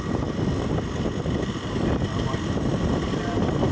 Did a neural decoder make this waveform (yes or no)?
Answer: no